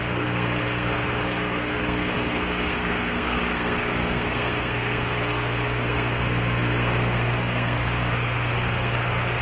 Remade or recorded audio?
remade